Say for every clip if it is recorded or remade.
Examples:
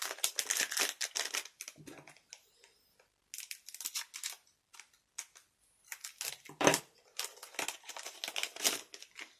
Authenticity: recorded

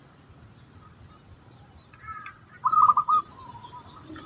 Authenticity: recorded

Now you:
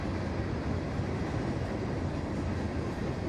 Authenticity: recorded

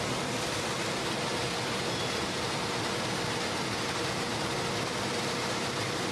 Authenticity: recorded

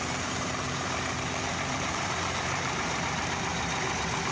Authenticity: remade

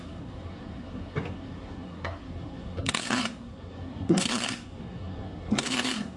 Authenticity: remade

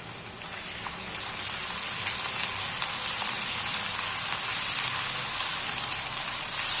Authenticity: recorded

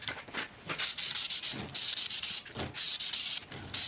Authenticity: recorded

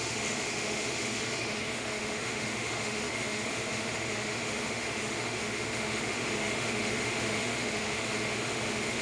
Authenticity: remade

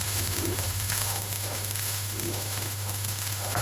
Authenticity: remade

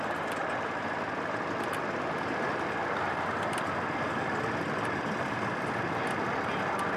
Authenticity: recorded